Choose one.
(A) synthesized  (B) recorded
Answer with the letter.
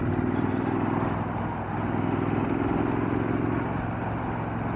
B